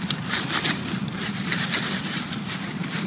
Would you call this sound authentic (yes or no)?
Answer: yes